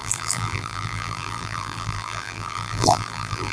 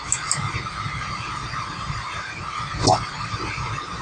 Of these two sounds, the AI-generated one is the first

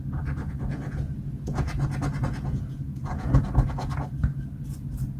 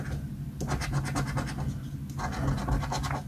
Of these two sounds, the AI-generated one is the first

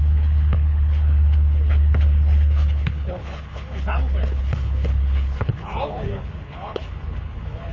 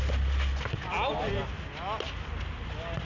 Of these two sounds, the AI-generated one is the first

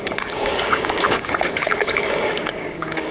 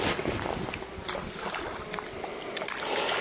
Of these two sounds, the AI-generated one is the first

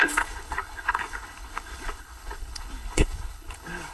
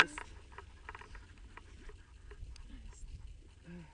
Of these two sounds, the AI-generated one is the first